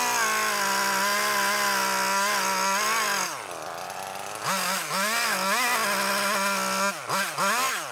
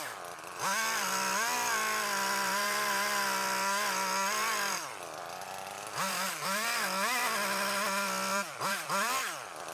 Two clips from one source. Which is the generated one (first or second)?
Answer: second